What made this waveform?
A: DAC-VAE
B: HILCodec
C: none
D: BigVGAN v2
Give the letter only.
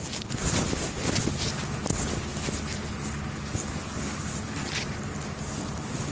C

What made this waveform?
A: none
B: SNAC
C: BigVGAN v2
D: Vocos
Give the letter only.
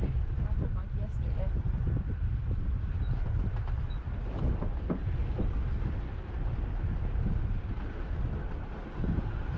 A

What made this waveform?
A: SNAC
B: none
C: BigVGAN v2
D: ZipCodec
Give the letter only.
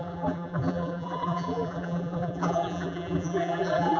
C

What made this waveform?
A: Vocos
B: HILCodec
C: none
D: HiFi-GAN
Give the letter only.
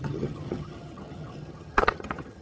D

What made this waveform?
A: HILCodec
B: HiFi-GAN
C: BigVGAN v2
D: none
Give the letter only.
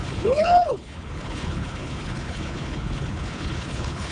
A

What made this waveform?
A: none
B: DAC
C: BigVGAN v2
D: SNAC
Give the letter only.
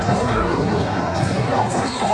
D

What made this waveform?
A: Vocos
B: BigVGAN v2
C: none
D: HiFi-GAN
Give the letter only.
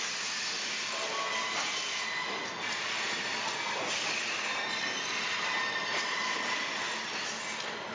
C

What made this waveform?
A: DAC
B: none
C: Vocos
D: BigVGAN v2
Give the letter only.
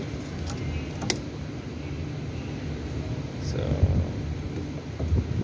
B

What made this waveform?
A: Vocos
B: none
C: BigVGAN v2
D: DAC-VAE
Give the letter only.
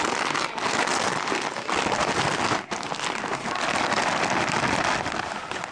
B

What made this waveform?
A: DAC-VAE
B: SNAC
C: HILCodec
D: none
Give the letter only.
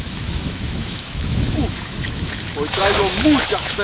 A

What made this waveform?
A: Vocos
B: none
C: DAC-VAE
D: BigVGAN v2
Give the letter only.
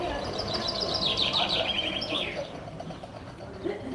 D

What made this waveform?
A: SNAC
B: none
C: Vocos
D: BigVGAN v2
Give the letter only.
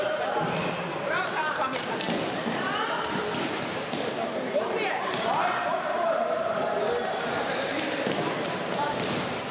D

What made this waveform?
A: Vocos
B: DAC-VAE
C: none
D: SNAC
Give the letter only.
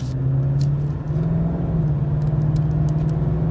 C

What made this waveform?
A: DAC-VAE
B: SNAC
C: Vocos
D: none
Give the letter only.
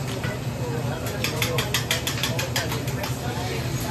D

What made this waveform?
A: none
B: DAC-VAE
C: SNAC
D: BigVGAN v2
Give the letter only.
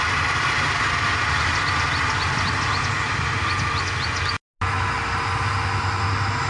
A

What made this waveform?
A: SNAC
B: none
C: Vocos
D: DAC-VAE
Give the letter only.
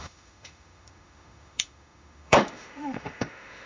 D